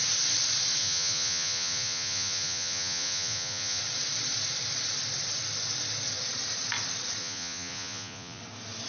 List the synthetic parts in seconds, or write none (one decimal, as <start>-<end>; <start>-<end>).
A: 0.8-3.8; 7.2-8.4